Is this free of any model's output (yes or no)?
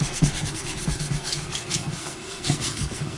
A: no